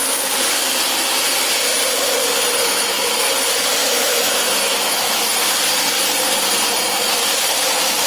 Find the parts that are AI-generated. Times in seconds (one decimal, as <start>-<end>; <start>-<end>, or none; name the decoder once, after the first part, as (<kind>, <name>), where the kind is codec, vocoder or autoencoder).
2.6-3.2 (autoencoder, DAC-VAE); 3.8-5.2

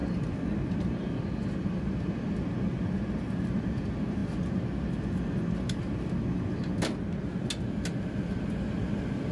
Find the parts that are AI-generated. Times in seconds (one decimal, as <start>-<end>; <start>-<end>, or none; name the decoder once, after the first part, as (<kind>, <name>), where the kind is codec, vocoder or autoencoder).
none

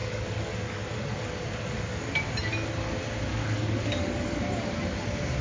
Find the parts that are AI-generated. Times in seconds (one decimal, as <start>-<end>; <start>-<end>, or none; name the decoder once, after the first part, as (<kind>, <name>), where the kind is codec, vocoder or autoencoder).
0.0-2.0 (codec, DAC); 3.3-4.4

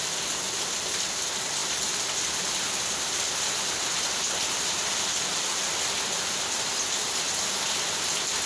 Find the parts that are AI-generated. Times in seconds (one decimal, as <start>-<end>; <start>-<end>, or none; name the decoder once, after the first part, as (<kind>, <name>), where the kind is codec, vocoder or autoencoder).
none

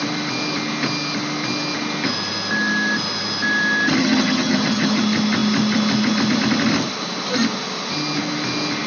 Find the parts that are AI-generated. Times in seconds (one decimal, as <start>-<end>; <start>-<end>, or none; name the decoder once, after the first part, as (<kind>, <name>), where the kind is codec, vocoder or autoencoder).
4.0-5.0 (vocoder, HiFi-GAN)